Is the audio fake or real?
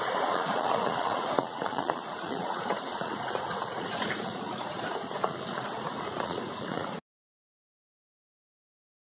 fake